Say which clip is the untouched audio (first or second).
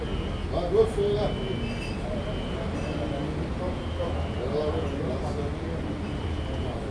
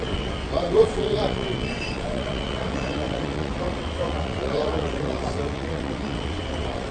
first